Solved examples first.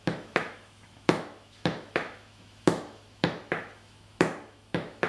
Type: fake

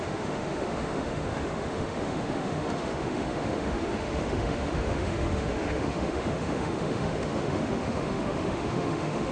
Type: fake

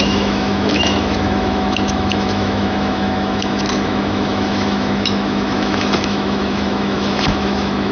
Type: fake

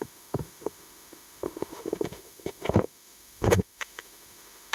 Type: fake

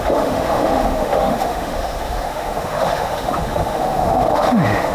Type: fake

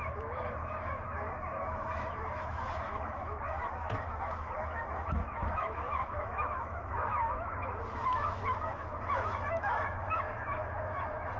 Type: fake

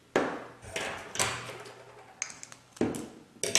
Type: real